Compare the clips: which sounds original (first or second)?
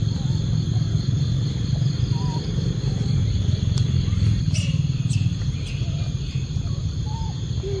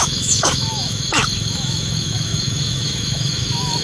first